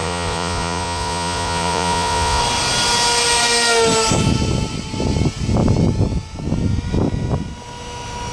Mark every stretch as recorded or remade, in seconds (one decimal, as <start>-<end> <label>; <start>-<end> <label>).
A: 0.0-2.4 remade; 2.4-8.3 recorded